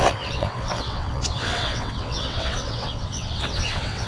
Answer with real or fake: fake